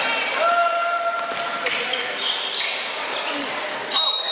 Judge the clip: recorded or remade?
recorded